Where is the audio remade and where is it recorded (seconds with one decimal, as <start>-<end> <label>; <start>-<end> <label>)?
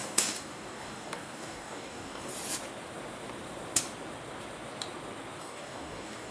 0.0-2.3 remade; 2.3-5.4 recorded; 5.4-6.3 remade